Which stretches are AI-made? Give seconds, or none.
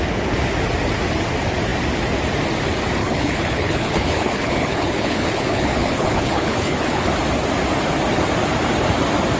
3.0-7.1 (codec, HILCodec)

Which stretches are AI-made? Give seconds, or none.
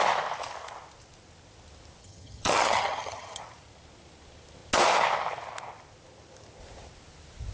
2.0-3.4 (vocoder, HiFi-GAN)